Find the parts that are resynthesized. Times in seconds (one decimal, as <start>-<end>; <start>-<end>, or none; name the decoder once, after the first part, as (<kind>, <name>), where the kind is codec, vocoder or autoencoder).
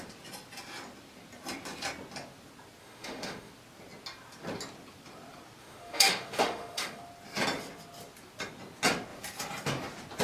2.8-3.5 (autoencoder, DAC-VAE); 5.6-7.0